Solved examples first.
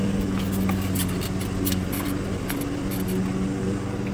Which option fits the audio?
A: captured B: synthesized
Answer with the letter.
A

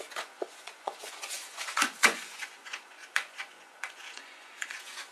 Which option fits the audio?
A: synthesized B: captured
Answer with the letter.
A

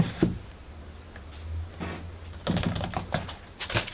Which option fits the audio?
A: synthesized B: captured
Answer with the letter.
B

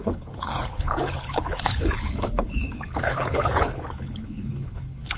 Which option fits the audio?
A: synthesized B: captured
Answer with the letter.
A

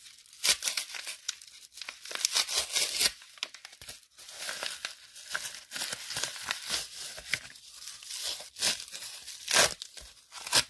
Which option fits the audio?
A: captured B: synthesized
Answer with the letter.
A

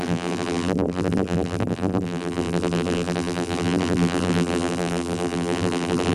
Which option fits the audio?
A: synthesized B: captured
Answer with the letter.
A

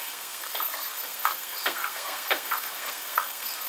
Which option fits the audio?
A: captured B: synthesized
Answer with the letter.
B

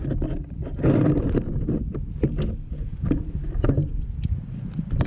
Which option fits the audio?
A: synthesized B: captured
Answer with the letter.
B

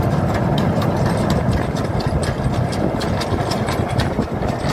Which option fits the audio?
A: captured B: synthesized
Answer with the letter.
A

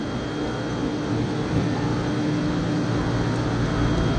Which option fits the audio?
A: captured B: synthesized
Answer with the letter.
A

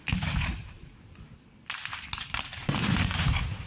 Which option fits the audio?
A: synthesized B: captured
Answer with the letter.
B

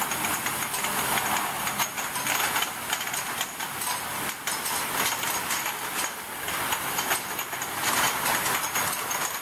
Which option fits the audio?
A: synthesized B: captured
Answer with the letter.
B